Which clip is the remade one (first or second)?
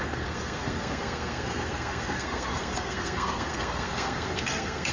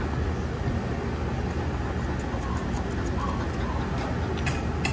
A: first